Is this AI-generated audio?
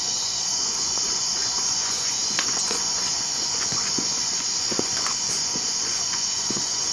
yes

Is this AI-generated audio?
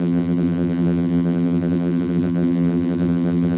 yes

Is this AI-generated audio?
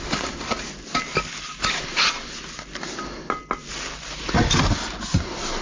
no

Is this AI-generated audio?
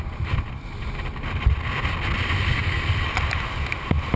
no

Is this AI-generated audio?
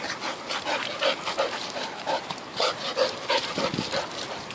no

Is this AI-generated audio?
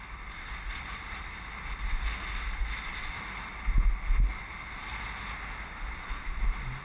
no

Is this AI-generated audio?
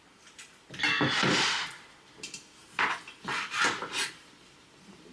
no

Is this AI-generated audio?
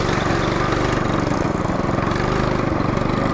no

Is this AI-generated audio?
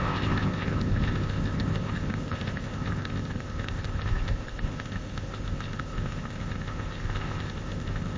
yes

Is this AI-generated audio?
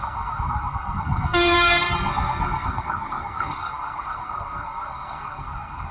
yes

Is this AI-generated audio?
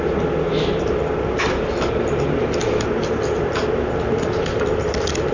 no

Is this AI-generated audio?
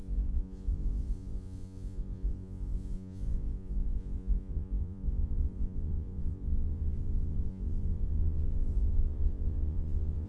yes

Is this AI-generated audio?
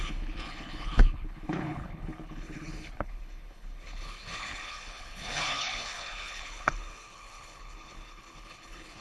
yes